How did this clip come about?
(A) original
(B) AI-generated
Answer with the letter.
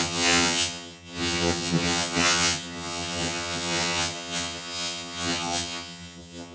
B